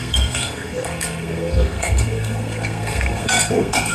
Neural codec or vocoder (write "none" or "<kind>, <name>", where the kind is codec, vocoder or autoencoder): codec, SNAC